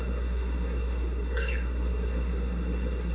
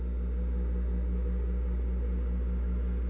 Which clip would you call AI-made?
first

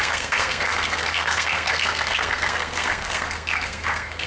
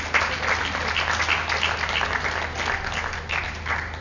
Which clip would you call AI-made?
first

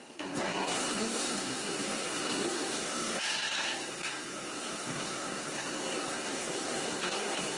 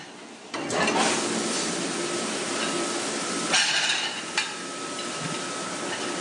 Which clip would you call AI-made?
first